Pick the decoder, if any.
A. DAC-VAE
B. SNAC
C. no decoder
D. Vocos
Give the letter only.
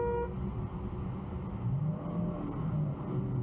C